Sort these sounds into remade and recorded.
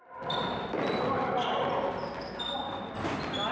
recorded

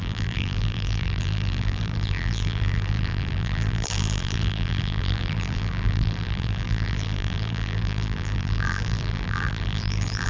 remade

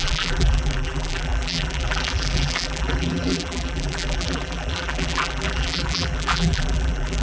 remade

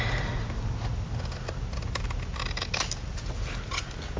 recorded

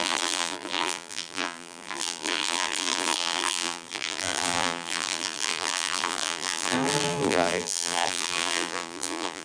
remade